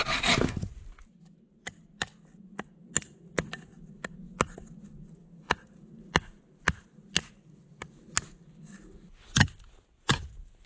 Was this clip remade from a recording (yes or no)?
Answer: no